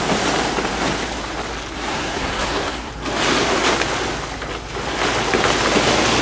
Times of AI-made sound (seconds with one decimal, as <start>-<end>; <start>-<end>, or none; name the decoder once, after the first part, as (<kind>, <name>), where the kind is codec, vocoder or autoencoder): 1.9-2.9 (codec, SNAC)